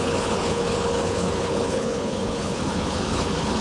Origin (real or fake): fake